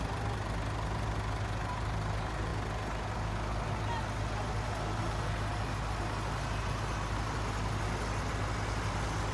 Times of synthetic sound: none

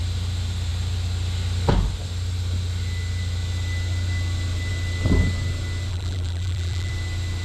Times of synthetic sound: 5.9-6.9 (vocoder, BigVGAN v2)

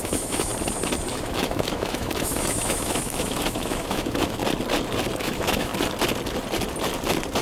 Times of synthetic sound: 0.0-0.5 (autoencoder, DAC-VAE); 1.1-4.4; 5.2-5.7

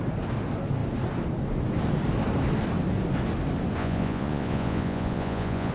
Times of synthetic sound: 3.8-5.7 (vocoder, Vocos)

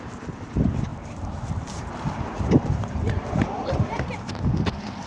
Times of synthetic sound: 0.9-4.0 (vocoder, BigVGAN v2)

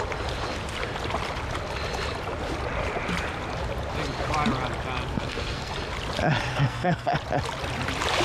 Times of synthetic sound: 5.1-5.7 (codec, SNAC); 6.5-7.1

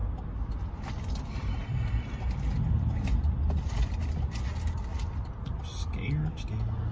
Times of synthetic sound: 0.0-4.1 (vocoder, BigVGAN v2); 4.9-6.1

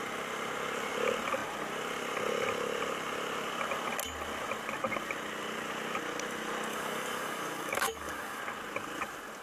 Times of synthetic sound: 6.7-8.4 (codec, DAC)